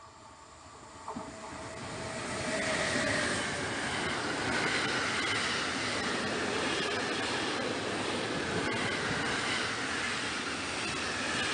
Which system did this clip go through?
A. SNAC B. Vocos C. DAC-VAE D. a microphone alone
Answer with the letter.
D